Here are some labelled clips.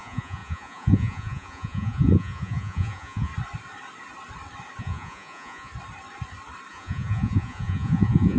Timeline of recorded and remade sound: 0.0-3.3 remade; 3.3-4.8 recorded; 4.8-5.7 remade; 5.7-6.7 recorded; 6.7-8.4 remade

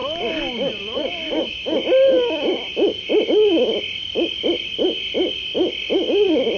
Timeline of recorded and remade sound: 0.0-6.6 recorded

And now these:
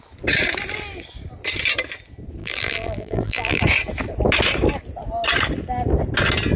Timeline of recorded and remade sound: 0.0-2.4 recorded; 2.4-3.6 remade; 3.6-6.6 recorded

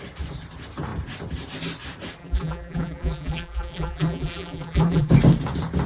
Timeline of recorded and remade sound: 0.0-2.2 recorded; 2.2-5.1 remade; 5.1-5.9 recorded

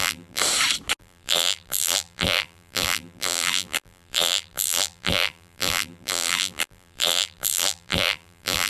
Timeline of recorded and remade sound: 0.0-0.4 remade; 0.4-1.0 recorded; 1.0-8.7 remade

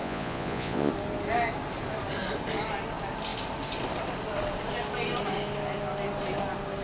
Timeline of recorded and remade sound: 0.0-0.9 remade; 0.9-6.8 recorded

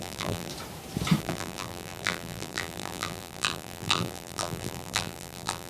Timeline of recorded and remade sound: 0.0-0.5 remade; 0.5-1.2 recorded; 1.2-5.7 remade

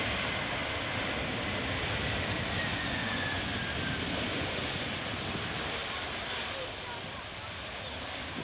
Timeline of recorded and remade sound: 0.0-2.7 recorded; 2.7-3.4 remade; 3.4-4.3 recorded; 4.3-5.2 remade; 5.2-8.4 recorded